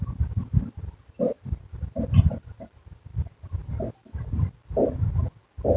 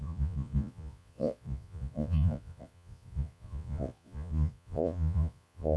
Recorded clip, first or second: first